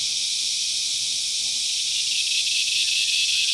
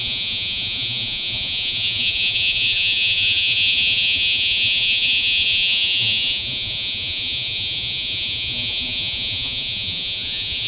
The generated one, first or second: second